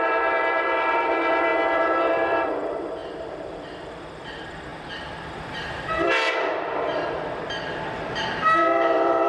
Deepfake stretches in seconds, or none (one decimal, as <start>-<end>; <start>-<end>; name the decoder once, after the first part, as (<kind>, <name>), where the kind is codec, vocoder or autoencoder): 0.0-1.5 (vocoder, BigVGAN v2); 2.0-9.3